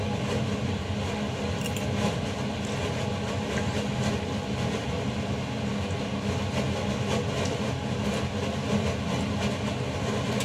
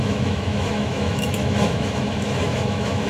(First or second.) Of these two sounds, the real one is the first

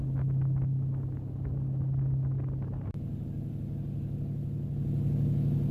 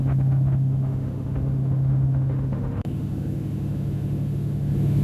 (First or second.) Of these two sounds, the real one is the first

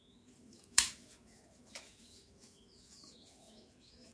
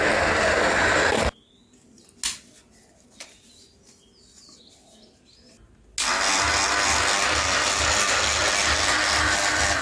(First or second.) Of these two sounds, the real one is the second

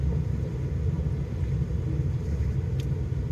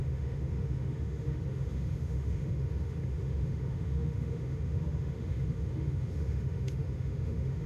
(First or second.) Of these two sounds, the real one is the first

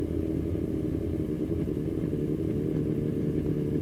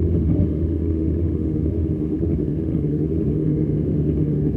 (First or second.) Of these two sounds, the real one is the first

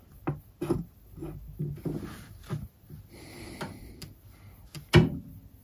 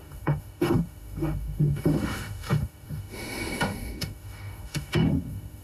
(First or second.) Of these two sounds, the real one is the first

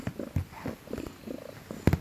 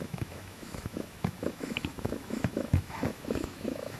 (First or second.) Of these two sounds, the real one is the first